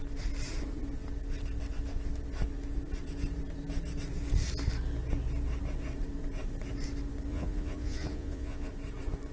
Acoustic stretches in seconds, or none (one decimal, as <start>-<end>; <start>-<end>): 0.0-7.3; 8.7-9.3